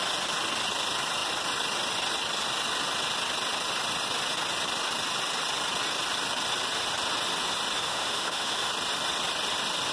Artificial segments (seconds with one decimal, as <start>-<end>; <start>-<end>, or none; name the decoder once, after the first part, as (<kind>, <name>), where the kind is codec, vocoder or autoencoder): 7.8-8.7 (autoencoder, DAC-VAE)